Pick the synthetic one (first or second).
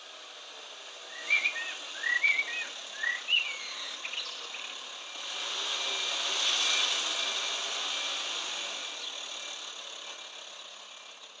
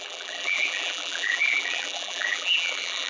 second